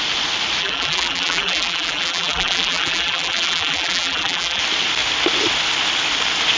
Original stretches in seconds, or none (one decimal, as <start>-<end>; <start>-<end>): 0.0-0.6; 4.6-6.6